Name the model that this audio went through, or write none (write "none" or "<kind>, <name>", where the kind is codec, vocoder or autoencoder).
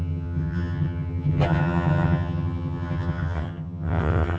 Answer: vocoder, HiFi-GAN